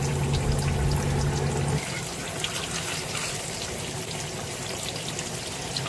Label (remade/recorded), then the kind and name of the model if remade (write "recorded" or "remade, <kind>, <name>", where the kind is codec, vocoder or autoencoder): recorded